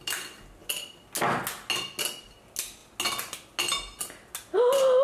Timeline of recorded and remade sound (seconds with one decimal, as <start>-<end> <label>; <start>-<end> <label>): 0.0-5.0 recorded